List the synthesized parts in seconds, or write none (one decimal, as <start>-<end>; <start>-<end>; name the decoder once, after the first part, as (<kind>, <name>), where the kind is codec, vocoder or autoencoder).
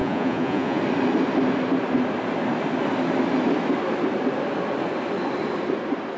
0.0-0.8 (vocoder, Vocos)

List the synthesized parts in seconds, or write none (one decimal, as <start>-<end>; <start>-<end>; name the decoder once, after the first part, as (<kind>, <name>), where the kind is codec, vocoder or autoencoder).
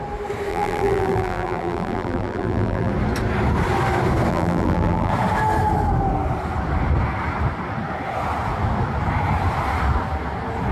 0.5-2.9 (vocoder, BigVGAN v2); 4.3-5.1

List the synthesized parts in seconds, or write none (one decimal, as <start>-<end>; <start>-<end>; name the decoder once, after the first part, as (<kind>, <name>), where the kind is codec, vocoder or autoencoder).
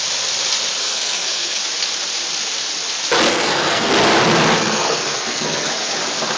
0.8-1.6 (codec, SNAC); 3.3-3.9; 4.6-5.9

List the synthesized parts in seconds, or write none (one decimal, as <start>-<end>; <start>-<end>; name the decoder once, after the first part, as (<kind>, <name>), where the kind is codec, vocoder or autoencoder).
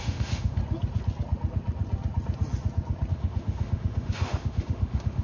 0.0-0.6 (autoencoder, DAC-VAE); 3.1-5.2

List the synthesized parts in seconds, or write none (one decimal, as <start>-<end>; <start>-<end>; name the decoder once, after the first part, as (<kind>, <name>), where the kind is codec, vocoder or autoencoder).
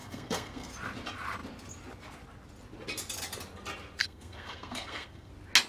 0.0-0.7 (codec, SNAC); 4.0-5.3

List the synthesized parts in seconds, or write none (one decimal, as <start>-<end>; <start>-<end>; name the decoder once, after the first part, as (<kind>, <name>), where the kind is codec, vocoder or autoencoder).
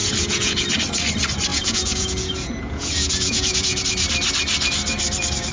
0.0-0.7 (vocoder, Vocos); 1.5-3.8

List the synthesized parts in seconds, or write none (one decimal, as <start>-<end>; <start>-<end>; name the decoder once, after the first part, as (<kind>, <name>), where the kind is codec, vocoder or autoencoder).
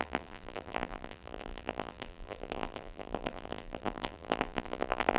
0.0-5.2 (vocoder, BigVGAN v2)